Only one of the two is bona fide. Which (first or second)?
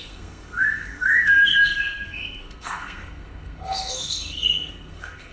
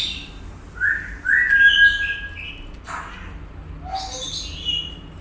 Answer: second